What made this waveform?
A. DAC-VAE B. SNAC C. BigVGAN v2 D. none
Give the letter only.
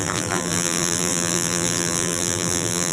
C